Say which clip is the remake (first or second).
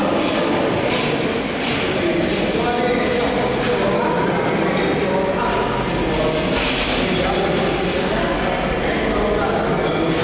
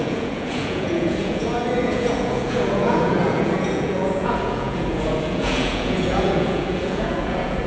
second